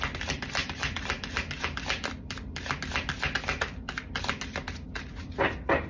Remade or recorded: recorded